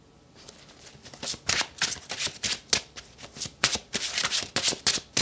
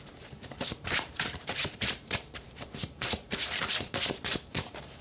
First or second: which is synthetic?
second